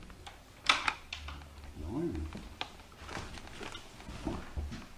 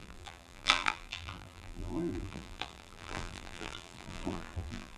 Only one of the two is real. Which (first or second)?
first